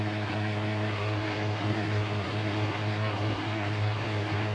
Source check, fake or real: fake